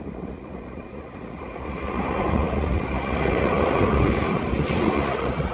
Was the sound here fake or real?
fake